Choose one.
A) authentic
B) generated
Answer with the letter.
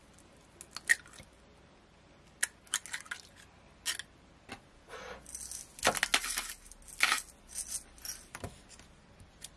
A